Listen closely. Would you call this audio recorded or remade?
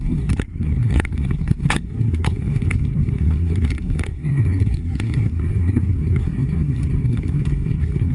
remade